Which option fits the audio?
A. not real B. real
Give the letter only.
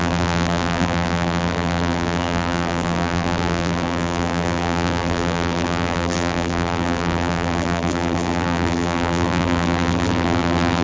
A